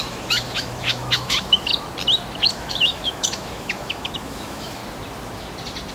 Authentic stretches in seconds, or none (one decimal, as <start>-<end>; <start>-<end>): 1.7-2.5; 4.8-5.9